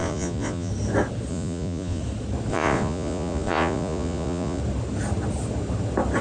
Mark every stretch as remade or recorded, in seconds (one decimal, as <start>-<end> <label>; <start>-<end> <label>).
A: 0.0-0.7 remade; 0.7-1.3 recorded; 1.3-2.0 remade; 2.0-2.5 recorded; 2.5-4.6 remade; 4.6-6.2 recorded